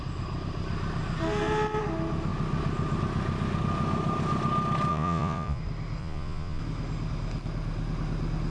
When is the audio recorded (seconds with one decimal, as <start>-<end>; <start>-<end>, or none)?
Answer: 0.0-4.9; 5.6-6.0; 6.6-8.5